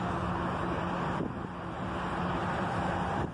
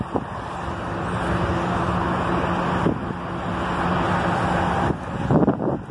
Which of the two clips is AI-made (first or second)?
first